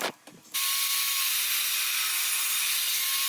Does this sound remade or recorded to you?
recorded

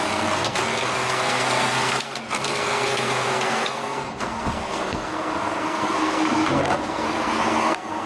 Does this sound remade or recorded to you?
remade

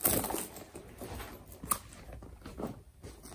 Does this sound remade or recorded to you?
recorded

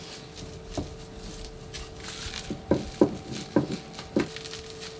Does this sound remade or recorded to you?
recorded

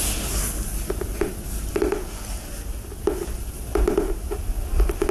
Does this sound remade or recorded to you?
recorded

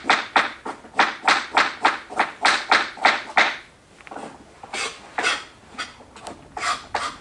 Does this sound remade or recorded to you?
recorded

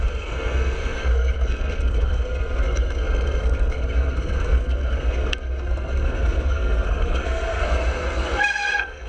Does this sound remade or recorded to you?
remade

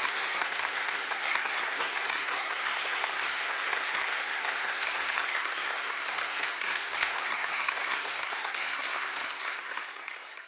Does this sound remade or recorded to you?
remade